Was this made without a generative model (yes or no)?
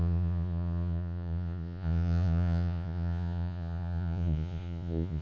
no